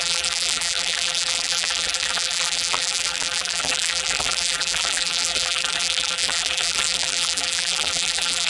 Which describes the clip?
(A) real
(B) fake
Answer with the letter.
B